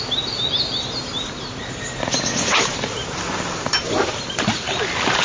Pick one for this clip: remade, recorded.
recorded